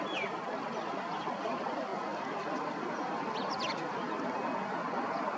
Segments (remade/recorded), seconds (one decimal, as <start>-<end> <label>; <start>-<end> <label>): 0.0-5.4 recorded